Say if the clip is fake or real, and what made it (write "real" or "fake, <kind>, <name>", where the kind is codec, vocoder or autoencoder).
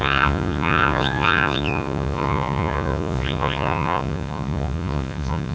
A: fake, vocoder, Vocos